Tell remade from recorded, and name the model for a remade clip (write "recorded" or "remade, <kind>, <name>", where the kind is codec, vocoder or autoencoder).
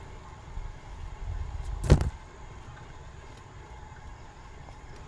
recorded